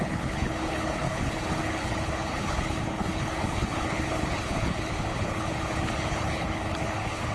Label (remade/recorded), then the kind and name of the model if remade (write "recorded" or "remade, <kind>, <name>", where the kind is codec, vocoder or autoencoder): remade, codec, HILCodec